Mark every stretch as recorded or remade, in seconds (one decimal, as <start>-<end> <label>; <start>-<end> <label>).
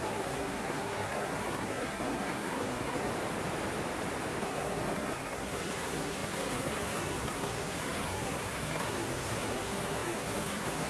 0.0-3.1 remade; 3.1-4.4 recorded; 4.4-10.9 remade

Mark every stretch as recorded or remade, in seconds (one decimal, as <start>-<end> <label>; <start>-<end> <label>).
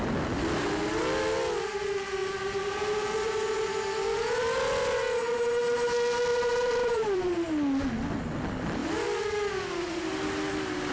0.0-2.2 recorded; 2.2-3.4 remade; 3.4-6.3 recorded; 6.3-7.3 remade; 7.3-10.9 recorded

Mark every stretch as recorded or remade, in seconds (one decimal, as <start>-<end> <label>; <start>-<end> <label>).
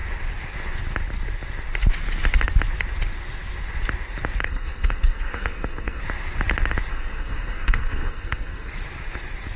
0.0-4.4 recorded; 4.4-6.0 remade; 6.0-6.9 recorded; 6.9-8.7 remade; 8.7-9.6 recorded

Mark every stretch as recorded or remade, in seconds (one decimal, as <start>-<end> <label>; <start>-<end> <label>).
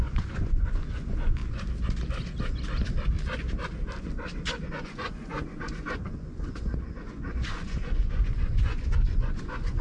0.0-1.4 remade; 1.4-4.7 recorded; 4.7-9.8 remade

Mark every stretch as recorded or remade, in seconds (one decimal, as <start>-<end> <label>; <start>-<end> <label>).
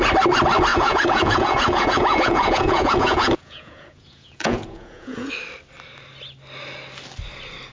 0.0-0.7 recorded; 0.7-5.3 remade; 5.3-7.7 recorded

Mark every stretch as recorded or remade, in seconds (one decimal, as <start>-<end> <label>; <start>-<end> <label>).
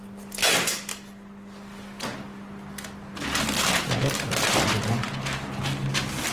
0.0-6.3 recorded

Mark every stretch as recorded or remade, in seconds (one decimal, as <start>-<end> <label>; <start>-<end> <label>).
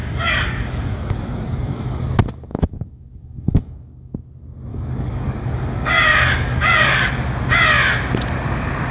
0.0-2.0 remade; 2.0-2.5 recorded; 2.5-4.2 remade; 4.2-4.7 recorded; 4.7-7.1 remade; 7.1-8.9 recorded